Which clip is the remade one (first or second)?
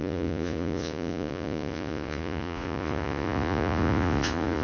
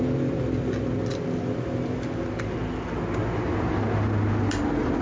first